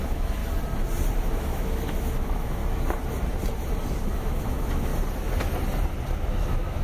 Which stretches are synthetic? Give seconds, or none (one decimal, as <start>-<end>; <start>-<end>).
0.0-0.4; 1.2-2.6; 4.0-4.9; 6.1-6.8